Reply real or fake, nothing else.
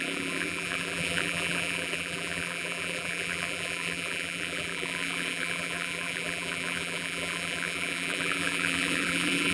fake